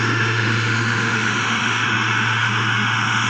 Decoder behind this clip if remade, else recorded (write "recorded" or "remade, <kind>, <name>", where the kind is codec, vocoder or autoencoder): remade, autoencoder, DAC-VAE